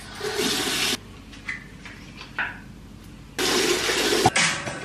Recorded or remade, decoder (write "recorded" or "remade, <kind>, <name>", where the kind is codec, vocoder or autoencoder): recorded